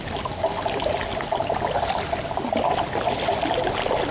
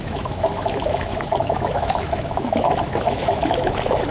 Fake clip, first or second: second